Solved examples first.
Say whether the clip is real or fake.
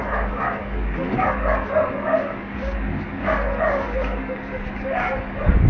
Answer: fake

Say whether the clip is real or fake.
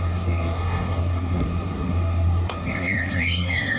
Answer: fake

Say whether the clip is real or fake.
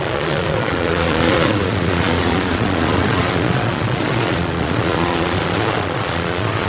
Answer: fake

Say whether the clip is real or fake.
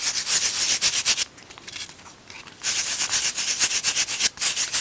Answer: real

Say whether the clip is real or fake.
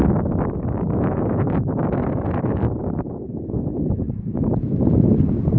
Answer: fake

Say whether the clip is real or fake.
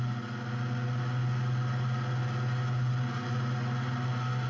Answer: real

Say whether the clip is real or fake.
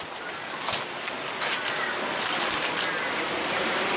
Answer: real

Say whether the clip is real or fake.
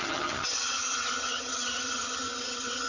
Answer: fake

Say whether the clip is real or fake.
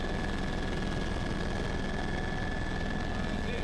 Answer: real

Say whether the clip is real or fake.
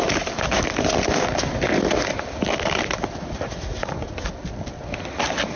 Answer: real